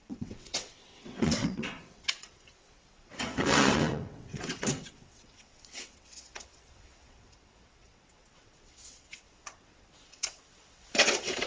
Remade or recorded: remade